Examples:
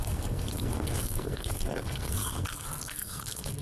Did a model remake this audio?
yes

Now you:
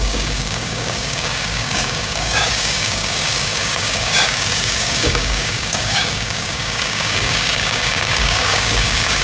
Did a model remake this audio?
yes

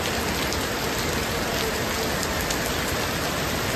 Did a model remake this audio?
no